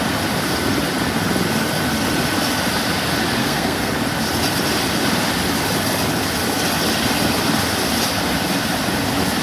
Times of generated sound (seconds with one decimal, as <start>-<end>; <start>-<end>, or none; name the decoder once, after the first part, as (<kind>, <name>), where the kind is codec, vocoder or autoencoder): 3.4-3.9 (codec, SNAC)